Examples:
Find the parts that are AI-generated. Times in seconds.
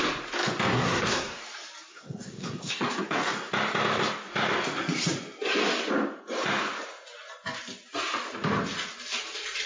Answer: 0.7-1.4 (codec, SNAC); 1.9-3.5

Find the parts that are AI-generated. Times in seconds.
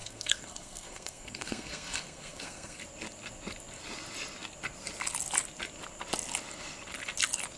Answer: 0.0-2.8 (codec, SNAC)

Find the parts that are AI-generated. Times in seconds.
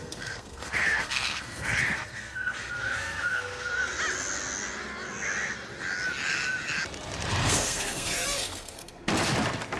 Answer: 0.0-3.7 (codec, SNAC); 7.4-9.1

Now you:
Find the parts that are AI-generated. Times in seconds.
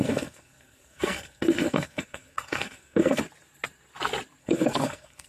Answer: 0.0-3.2 (codec, SNAC); 4.4-5.3